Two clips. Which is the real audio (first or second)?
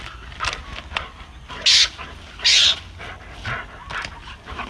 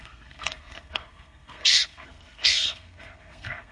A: first